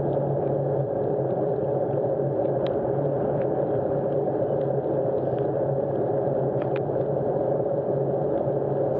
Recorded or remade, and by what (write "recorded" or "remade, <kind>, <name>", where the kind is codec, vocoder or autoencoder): recorded